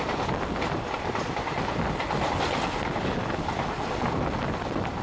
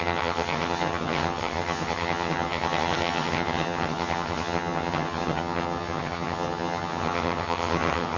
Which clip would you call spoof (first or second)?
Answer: second